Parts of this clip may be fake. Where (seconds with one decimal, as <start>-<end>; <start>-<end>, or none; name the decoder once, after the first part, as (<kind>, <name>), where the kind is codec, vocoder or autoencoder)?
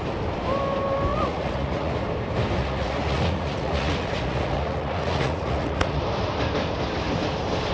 1.1-1.9 (vocoder, Vocos); 2.6-6.0